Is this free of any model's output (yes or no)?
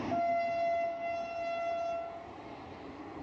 yes